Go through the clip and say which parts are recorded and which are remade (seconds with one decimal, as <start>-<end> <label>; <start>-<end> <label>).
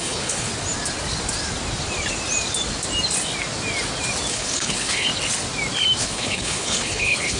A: 0.0-0.5 remade; 0.5-4.3 recorded; 4.3-5.1 remade; 5.1-6.0 recorded; 6.0-7.4 remade